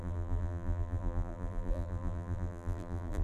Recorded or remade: remade